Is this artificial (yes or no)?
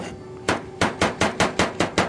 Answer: no